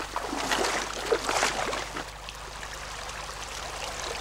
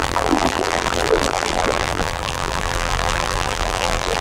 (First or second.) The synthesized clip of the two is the second